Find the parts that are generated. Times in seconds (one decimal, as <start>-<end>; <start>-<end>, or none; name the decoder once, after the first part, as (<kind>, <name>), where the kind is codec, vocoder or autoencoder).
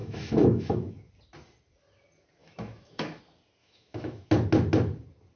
0.0-1.1 (autoencoder, DAC-VAE); 2.4-3.2; 3.6-4.3